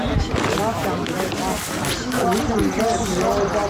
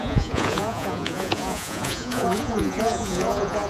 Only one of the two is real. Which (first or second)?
first